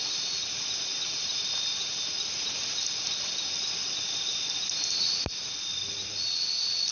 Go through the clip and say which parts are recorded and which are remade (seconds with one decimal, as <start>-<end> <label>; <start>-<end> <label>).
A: 0.0-6.9 recorded